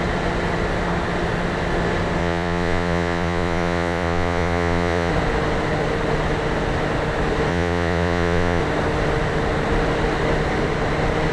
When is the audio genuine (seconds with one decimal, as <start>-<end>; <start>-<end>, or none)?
0.0-2.2; 5.1-7.5; 8.6-11.3